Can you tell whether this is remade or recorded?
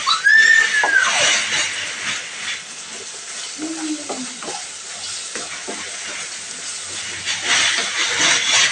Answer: recorded